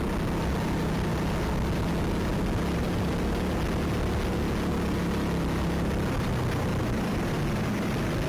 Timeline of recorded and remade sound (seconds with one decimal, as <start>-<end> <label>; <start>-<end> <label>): 0.0-8.3 recorded